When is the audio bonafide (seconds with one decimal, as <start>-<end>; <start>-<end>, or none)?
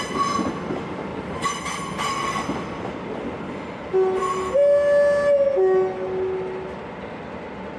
0.0-1.1; 2.8-7.8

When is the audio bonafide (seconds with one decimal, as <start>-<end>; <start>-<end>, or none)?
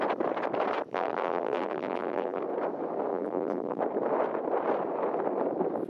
0.0-0.9; 2.4-3.1; 3.8-5.9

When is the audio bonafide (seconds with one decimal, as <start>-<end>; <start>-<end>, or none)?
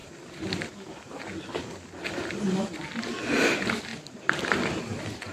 2.3-3.9; 4.8-5.3